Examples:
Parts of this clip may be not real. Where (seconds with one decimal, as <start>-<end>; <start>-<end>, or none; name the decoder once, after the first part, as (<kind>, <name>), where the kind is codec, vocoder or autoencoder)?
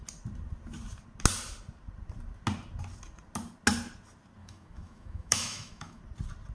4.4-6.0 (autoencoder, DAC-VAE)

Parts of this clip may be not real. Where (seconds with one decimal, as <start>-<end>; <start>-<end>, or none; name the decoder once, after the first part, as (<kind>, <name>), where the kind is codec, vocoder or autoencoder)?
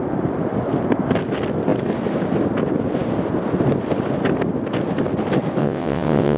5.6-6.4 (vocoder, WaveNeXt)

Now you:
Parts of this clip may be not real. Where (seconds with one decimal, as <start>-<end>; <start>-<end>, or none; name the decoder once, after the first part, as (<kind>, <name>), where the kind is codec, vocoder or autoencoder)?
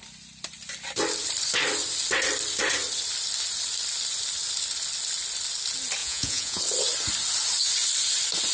6.0-6.6 (vocoder, Vocos)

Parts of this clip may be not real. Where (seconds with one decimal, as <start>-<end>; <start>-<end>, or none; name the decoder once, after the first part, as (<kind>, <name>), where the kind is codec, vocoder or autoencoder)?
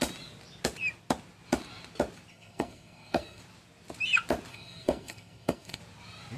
2.3-3.4 (codec, SNAC); 4.5-5.8